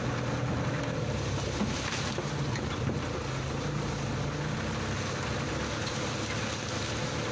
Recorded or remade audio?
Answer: recorded